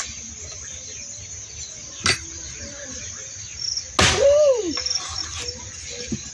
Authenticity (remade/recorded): recorded